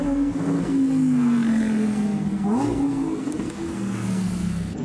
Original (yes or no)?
no